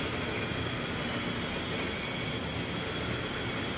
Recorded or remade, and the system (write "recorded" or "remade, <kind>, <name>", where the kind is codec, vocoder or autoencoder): recorded